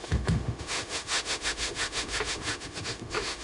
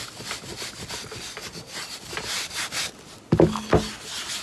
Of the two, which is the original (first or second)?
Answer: second